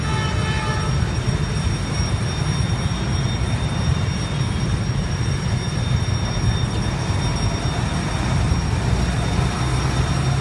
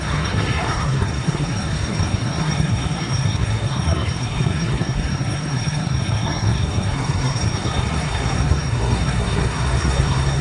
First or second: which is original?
first